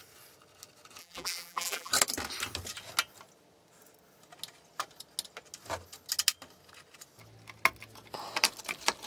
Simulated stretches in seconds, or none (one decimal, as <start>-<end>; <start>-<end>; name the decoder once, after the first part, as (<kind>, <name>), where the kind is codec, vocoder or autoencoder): 1.0-1.9 (vocoder, BigVGAN v2)